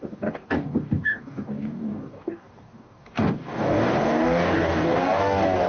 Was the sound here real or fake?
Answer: fake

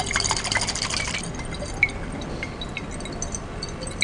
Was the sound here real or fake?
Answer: real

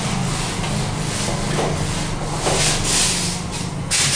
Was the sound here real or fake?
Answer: real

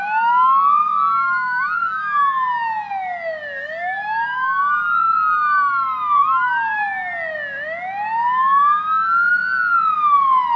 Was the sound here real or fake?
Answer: real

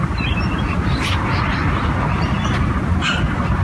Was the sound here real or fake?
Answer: real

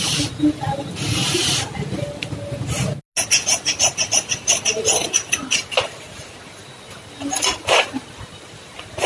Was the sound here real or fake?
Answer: real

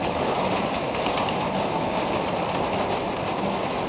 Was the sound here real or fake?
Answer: real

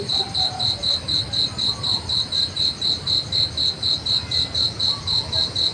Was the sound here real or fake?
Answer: real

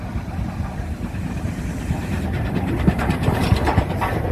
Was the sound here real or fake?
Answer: fake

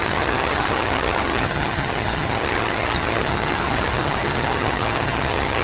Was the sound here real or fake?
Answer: fake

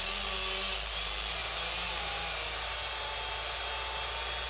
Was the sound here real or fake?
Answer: real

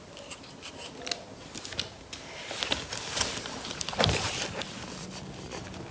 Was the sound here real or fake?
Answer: real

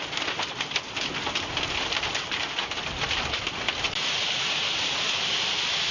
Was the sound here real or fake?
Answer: real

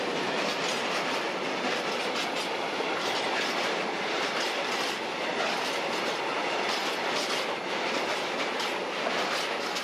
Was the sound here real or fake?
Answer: real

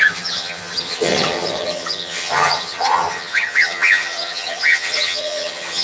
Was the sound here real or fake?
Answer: fake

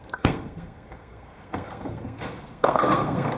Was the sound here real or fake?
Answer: fake